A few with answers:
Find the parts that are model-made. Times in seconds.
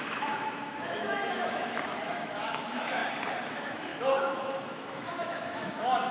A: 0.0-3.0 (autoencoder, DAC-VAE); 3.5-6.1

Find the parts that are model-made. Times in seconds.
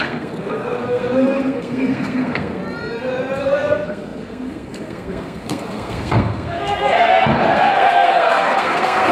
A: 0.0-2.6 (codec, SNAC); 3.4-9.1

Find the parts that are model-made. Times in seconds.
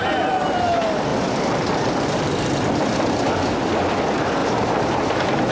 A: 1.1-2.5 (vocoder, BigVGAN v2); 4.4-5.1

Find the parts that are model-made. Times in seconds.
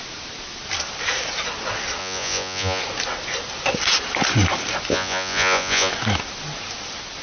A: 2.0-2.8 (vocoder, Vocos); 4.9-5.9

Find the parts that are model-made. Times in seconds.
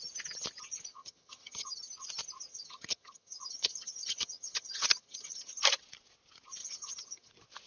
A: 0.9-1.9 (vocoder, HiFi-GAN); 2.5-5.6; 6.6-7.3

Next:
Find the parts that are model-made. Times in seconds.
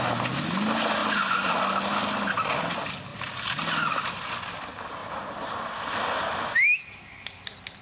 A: 1.0-1.6 (vocoder, BigVGAN v2); 3.1-4.4; 5.0-6.0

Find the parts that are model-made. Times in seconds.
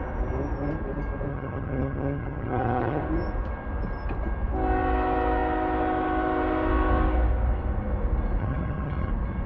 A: 1.3-3.0 (vocoder, HiFi-GAN); 8.4-9.1